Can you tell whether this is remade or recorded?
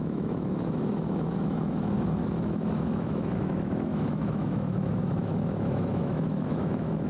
remade